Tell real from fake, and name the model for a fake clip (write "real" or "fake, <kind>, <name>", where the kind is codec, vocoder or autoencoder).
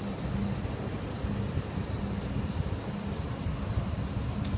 real